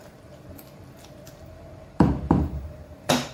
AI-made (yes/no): yes